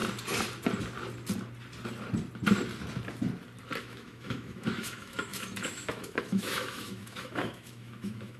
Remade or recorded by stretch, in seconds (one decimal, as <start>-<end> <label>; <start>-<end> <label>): 0.0-3.8 recorded; 3.8-8.4 remade